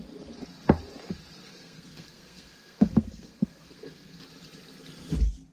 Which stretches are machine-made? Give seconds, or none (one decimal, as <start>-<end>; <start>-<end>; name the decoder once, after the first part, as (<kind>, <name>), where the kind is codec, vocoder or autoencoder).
1.5-4.2 (codec, SNAC)